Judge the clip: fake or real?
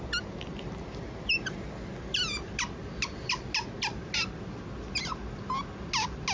real